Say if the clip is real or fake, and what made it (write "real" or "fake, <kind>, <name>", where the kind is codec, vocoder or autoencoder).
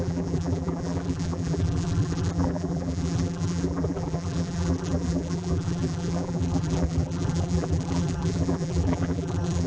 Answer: fake, vocoder, BigVGAN v2